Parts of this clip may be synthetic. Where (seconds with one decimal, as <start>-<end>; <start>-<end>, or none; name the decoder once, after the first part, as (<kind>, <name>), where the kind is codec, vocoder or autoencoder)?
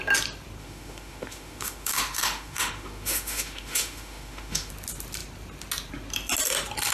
0.6-4.7 (autoencoder, DAC-VAE)